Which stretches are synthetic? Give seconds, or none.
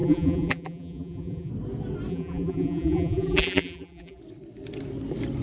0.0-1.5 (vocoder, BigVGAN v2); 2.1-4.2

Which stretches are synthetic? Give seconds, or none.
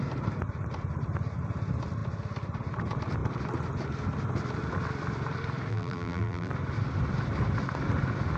5.7-6.5 (vocoder, BigVGAN v2)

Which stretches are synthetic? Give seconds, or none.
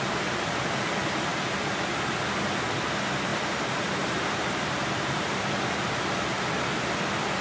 3.3-5.4 (vocoder, BigVGAN v2)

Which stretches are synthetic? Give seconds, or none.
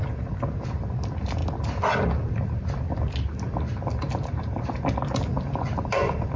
none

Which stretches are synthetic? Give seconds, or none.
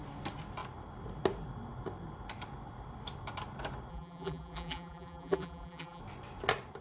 3.9-6.0 (vocoder, BigVGAN v2)